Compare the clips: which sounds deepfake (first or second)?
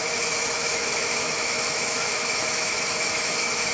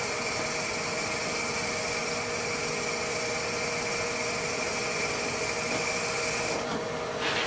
first